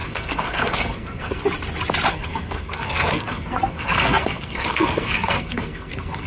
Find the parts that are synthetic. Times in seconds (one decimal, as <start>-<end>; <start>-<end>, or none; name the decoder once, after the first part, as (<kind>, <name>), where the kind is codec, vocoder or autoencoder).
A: 0.0-1.4 (codec, SNAC); 2.1-6.3